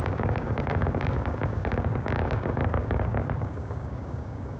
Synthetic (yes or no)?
yes